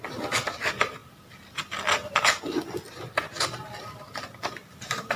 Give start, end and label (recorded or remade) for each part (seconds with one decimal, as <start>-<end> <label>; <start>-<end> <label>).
0.0-5.2 recorded